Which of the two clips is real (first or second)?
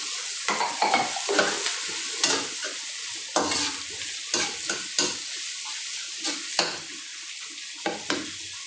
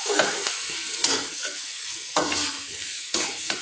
first